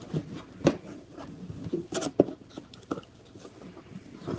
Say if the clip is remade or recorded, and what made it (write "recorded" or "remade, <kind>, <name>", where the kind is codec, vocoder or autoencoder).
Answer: remade, vocoder, BigVGAN v2